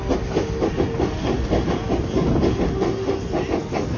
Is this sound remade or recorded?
recorded